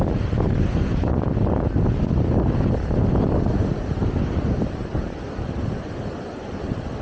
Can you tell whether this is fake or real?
real